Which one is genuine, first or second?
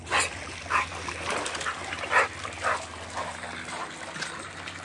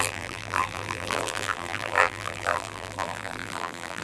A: first